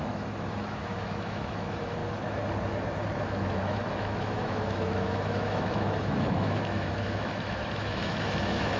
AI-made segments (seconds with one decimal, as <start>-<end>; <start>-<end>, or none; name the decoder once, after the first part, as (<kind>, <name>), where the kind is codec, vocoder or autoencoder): 0.0-2.0 (autoencoder, DAC-VAE); 3.2-8.8